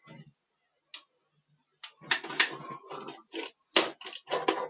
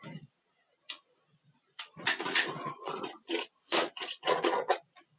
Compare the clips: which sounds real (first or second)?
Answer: first